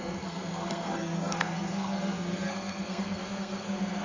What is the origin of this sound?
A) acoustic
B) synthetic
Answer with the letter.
B